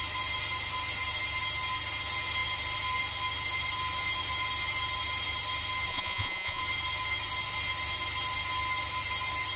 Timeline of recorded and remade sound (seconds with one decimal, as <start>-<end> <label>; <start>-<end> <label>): 0.0-5.9 recorded; 5.9-6.6 remade; 6.6-9.6 recorded

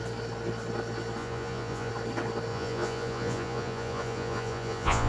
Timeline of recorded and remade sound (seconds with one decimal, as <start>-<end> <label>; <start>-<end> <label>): 0.0-1.2 recorded; 1.2-1.9 remade; 1.9-2.5 recorded; 2.5-5.1 remade

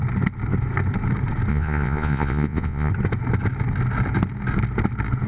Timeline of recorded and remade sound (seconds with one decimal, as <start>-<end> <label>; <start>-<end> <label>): 0.0-1.5 recorded; 1.5-2.9 remade; 2.9-5.3 recorded

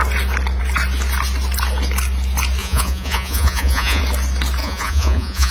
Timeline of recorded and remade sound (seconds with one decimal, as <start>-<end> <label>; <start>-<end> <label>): 0.0-2.6 recorded; 2.6-4.0 remade; 4.0-4.6 recorded; 4.6-5.5 remade

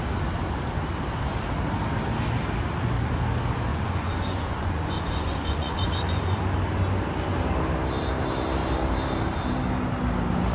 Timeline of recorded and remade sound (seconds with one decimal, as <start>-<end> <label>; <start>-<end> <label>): 0.0-3.7 recorded; 3.7-6.4 remade; 6.4-10.5 recorded